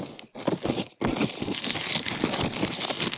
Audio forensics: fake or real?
real